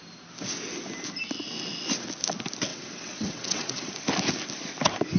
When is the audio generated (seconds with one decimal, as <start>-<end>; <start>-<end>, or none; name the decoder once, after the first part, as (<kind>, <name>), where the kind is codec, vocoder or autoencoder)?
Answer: 2.7-3.9 (vocoder, WaveNeXt)